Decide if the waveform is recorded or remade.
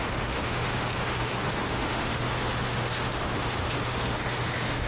remade